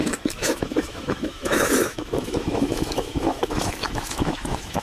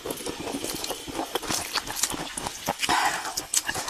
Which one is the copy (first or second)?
first